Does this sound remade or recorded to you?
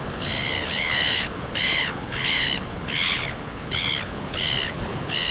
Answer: remade